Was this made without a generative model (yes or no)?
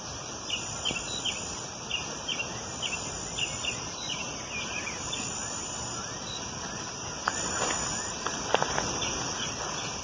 yes